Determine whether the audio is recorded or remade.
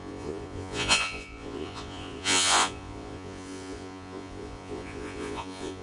remade